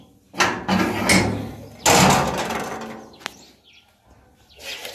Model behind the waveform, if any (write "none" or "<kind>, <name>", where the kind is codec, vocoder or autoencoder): none